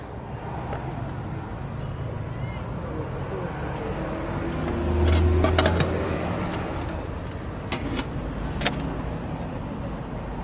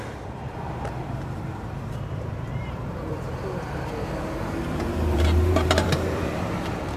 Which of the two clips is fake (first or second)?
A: second